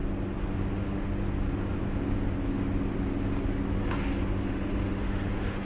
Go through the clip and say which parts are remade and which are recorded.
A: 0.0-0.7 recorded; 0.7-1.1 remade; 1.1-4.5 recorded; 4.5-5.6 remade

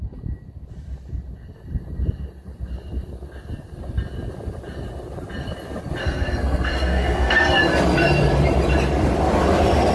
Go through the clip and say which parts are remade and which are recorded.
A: 0.0-6.0 recorded; 6.0-7.6 remade; 7.6-9.9 recorded

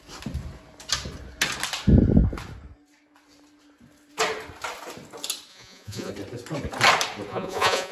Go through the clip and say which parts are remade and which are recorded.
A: 0.0-5.5 recorded; 5.5-6.1 remade; 6.1-7.3 recorded; 7.3-7.9 remade

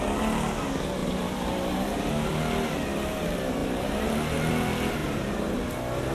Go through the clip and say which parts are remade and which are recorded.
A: 0.0-1.0 recorded; 1.0-2.1 remade; 2.1-3.6 recorded; 3.6-4.5 remade; 4.5-5.0 recorded; 5.0-5.6 remade; 5.6-6.1 recorded

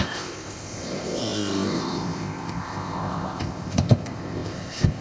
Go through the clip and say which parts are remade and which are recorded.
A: 0.0-5.0 remade

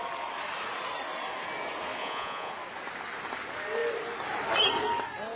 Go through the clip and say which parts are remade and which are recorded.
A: 0.0-2.0 recorded; 2.0-2.5 remade; 2.5-5.4 recorded